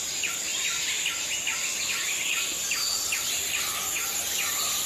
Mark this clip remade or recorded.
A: recorded